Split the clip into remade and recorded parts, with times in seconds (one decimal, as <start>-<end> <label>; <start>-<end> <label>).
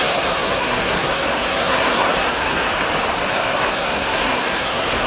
0.0-2.7 remade; 2.7-3.3 recorded; 3.3-5.1 remade